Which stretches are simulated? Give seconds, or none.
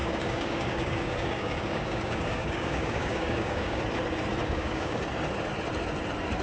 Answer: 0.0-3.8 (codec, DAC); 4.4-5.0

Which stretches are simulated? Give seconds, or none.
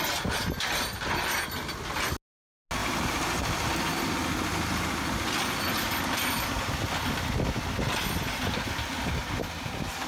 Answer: 2.8-3.7 (vocoder, BigVGAN v2)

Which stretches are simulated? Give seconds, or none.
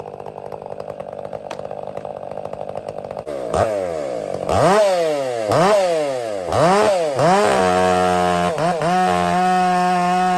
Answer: none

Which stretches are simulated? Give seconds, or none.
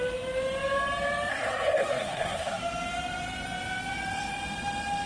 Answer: 1.3-2.6 (codec, SNAC)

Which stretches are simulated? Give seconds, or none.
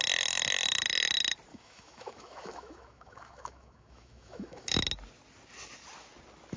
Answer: 1.5-4.8 (autoencoder, DAC-VAE)